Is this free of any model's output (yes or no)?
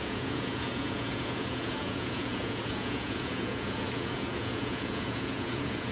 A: no